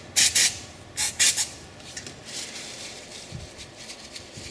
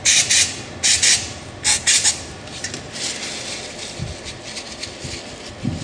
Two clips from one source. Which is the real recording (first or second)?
second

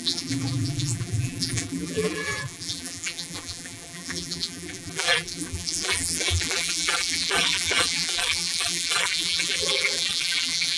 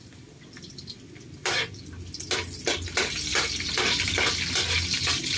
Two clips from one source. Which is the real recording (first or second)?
second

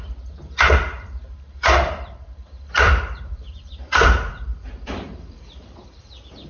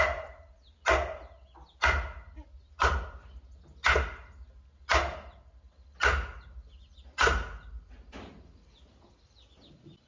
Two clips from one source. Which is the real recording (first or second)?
second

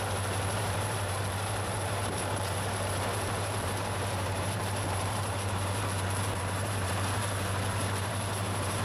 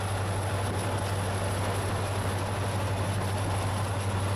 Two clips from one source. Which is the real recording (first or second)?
second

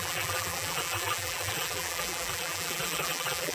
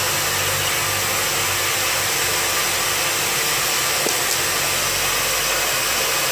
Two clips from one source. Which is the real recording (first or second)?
second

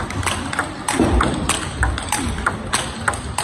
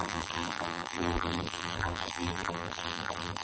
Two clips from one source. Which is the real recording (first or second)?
first